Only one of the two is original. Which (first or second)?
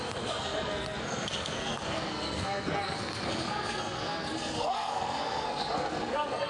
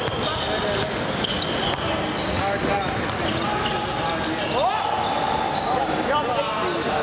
second